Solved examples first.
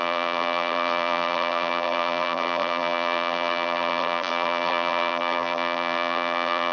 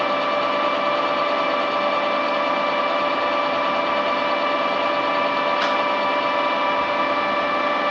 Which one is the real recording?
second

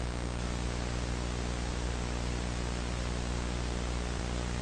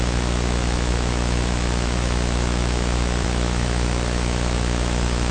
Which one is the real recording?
first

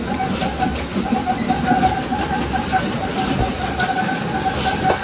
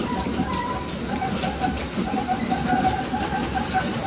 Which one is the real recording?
first